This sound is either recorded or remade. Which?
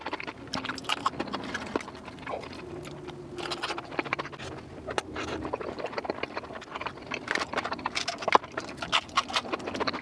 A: recorded